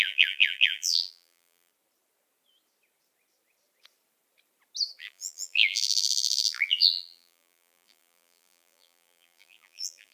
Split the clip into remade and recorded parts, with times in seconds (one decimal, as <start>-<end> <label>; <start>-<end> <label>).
0.0-1.7 remade; 1.7-5.0 recorded; 5.0-10.1 remade